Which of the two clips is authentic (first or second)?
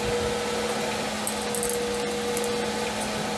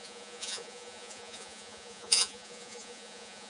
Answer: first